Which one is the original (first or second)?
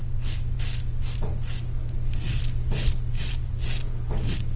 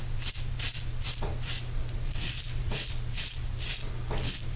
first